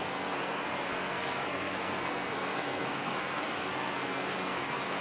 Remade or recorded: remade